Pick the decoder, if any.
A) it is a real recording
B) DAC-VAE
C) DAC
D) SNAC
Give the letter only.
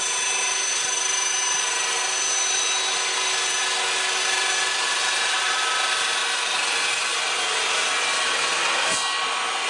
A